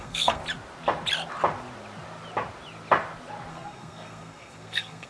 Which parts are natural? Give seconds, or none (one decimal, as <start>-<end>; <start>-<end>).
0.4-3.5